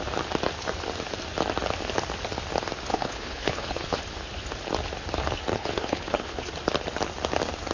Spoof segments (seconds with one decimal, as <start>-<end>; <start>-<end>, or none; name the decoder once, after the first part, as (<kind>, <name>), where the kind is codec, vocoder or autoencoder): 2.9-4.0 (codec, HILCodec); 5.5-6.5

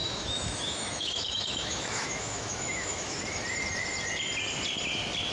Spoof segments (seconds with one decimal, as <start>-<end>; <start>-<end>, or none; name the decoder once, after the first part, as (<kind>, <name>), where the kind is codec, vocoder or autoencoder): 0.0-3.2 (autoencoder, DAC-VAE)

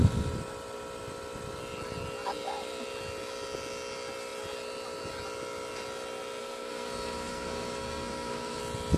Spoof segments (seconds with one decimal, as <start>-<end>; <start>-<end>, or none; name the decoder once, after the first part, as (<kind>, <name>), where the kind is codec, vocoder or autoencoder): 6.4-8.6 (codec, SNAC)

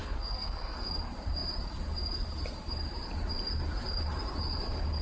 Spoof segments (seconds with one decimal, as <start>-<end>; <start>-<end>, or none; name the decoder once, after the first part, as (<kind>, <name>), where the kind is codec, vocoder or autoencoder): 0.0-0.9 (codec, SNAC)

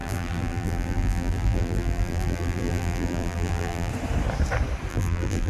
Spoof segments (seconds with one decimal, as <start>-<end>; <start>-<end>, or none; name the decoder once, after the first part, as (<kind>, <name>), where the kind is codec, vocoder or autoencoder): 0.0-3.9 (vocoder, BigVGAN v2); 4.9-5.5